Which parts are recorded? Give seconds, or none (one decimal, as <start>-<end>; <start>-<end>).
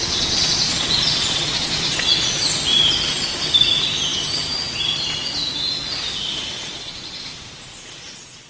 2.4-6.6